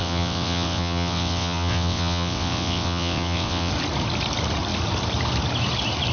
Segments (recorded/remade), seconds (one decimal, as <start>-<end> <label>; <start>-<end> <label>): 0.0-3.7 remade; 3.7-6.1 recorded